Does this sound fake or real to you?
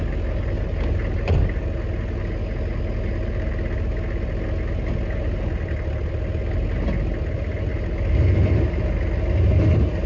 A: real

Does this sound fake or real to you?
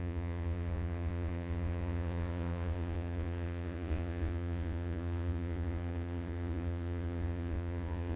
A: fake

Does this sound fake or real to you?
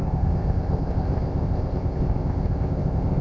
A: fake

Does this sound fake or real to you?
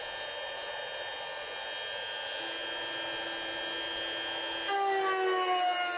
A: real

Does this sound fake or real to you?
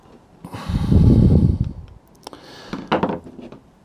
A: real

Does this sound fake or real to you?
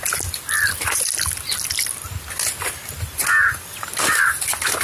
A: real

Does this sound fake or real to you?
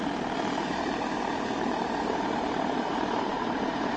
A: fake